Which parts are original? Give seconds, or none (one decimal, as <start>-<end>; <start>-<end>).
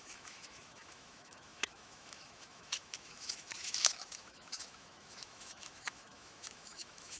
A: none